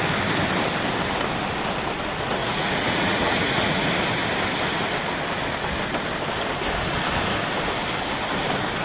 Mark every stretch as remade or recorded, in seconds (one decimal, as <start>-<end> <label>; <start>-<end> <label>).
0.0-2.4 recorded; 2.4-3.9 remade; 3.9-8.8 recorded